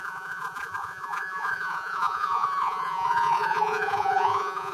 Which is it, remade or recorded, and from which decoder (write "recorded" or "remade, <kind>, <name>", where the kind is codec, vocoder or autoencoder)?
remade, vocoder, Vocos